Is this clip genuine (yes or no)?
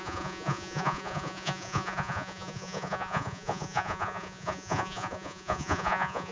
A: no